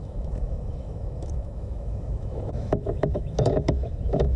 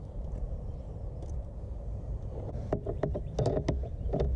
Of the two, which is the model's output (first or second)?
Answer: first